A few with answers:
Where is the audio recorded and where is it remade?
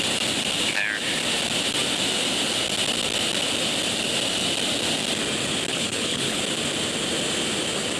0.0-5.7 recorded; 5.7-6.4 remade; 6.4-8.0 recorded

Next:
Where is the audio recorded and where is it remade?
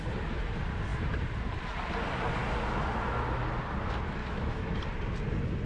0.0-4.2 recorded; 4.2-4.8 remade; 4.8-5.7 recorded